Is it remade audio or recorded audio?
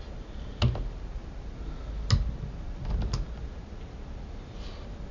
recorded